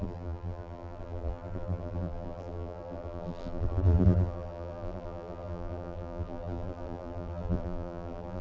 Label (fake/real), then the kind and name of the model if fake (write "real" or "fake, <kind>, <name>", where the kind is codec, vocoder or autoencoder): fake, vocoder, BigVGAN v2